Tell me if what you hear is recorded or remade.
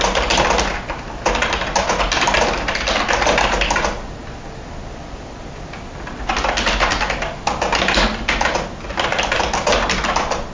recorded